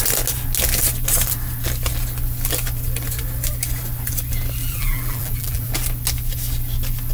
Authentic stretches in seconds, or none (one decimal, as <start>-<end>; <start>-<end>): 0.0-4.6; 5.7-7.1